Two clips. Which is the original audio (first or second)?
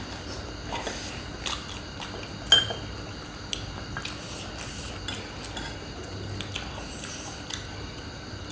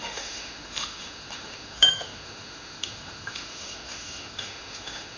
first